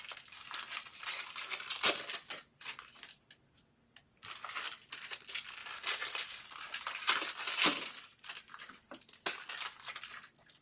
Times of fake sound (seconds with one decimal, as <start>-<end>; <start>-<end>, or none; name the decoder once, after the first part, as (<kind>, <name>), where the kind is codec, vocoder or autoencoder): 5.6-7.2 (vocoder, BigVGAN v2); 7.7-8.3

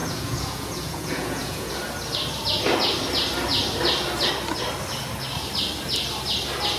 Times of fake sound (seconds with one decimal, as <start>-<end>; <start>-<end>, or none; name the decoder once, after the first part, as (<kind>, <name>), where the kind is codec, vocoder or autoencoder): 0.0-1.7 (vocoder, Vocos)

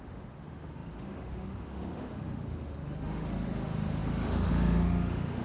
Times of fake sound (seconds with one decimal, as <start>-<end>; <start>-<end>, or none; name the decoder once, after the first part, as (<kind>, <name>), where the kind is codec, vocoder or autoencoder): 0.0-5.4 (autoencoder, DAC-VAE)

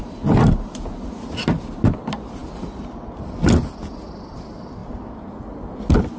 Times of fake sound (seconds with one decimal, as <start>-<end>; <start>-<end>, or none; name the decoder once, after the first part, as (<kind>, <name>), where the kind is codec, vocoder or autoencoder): none

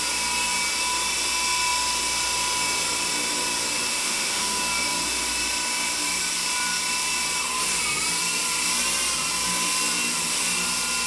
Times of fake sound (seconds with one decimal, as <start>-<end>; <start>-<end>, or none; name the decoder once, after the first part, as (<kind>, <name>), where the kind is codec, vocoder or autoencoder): 4.0-4.6 (autoencoder, DAC-VAE)

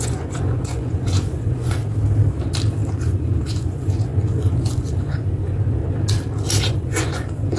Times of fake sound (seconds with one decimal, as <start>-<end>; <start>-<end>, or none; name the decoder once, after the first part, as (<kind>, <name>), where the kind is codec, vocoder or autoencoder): 0.0-1.8 (vocoder, Vocos); 2.9-5.8; 6.7-7.6

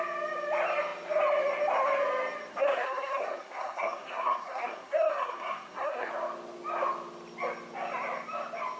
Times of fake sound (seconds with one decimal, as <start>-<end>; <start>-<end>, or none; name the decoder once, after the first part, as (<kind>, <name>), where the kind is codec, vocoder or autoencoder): 2.5-6.1 (codec, SNAC)

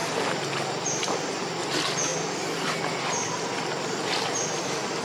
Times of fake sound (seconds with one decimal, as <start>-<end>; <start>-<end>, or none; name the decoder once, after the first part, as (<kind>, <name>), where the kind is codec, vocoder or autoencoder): none